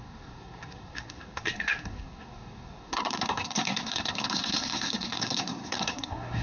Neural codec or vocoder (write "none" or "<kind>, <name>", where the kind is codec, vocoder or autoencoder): codec, SNAC